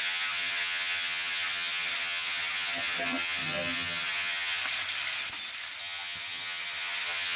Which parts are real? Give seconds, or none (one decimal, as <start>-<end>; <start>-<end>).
4.6-5.8